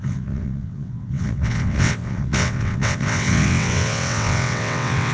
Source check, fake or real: fake